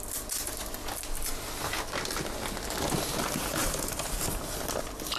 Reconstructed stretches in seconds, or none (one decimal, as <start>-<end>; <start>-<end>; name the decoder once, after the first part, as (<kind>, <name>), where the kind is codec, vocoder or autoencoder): none